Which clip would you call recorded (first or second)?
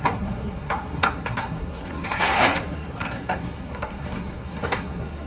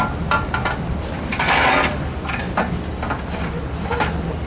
second